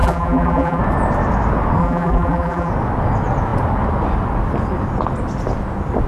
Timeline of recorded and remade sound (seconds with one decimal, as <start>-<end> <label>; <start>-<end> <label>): 0.0-0.8 remade; 0.8-1.8 recorded; 1.8-2.7 remade; 2.7-6.1 recorded